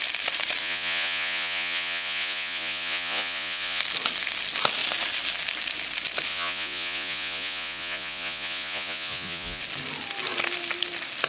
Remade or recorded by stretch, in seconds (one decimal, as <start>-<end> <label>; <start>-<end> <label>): 0.0-0.6 recorded; 0.6-3.8 remade; 3.8-6.3 recorded; 6.3-9.6 remade; 9.6-11.3 recorded